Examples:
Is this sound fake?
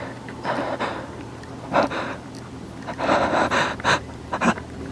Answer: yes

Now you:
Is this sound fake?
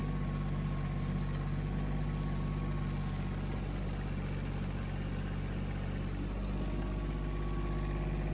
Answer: no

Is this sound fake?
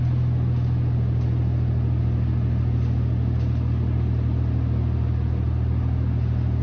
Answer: no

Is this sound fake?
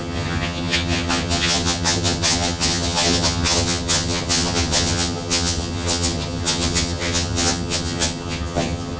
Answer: yes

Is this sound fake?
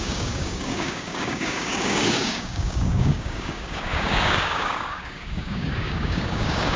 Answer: yes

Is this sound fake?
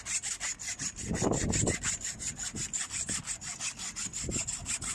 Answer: no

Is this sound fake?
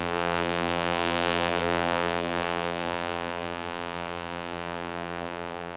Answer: yes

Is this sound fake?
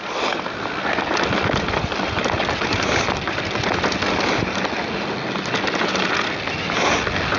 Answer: no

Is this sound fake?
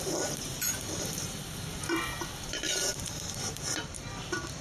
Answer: yes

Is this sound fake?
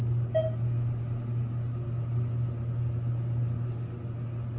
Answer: no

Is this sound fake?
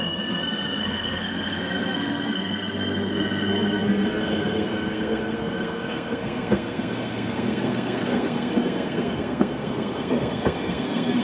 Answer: yes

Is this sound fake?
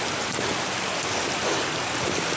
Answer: no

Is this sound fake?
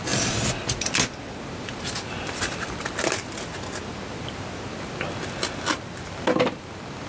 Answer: no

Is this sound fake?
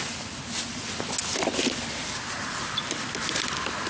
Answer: no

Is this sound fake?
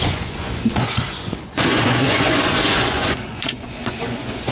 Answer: yes